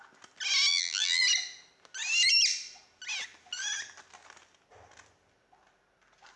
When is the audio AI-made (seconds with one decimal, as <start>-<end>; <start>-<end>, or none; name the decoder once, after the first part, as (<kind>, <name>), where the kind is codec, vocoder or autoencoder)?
0.7-1.2 (vocoder, BigVGAN v2)